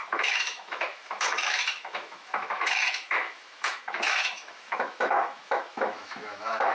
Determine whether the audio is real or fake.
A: fake